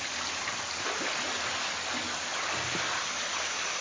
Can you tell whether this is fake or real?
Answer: real